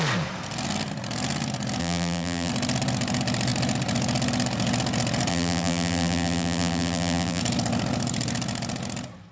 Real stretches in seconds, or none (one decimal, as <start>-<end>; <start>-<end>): 0.0-1.8; 2.5-5.3; 7.4-9.3